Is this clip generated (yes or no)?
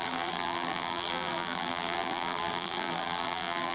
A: yes